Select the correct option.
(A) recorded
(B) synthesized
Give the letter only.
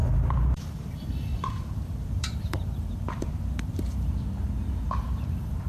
B